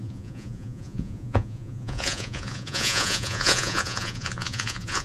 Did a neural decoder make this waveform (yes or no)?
yes